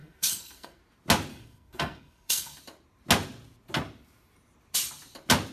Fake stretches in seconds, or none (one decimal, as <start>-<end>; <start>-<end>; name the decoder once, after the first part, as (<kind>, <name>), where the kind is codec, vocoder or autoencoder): 0.0-0.8 (codec, SNAC); 1.3-2.6